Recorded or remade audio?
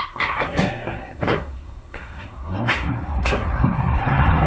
remade